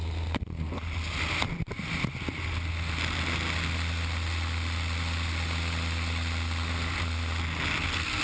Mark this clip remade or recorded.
recorded